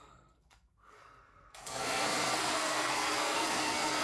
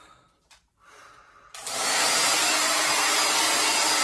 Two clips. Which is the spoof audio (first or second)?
first